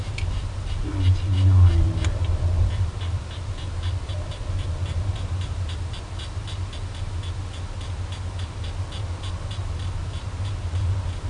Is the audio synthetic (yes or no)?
no